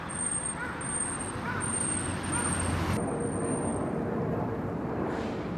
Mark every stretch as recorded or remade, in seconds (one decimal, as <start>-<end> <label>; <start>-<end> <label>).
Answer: 0.0-5.6 recorded